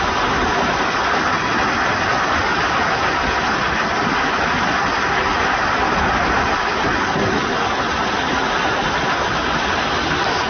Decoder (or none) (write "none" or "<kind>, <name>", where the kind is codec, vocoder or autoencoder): none